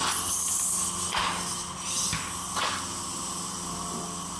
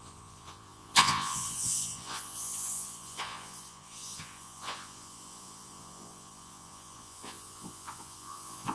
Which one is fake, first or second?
second